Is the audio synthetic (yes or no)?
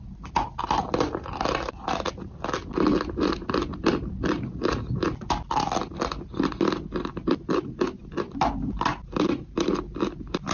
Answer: no